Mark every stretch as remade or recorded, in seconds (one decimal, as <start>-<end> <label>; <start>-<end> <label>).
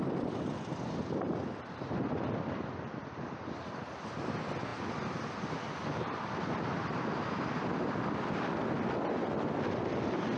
0.0-10.4 recorded